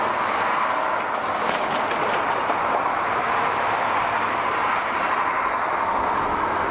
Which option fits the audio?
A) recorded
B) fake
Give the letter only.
A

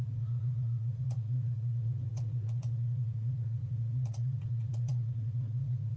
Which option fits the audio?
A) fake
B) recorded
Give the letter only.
A